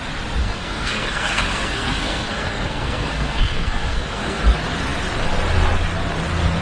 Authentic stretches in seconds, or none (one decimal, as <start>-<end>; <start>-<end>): 0.0-0.4; 4.4-6.6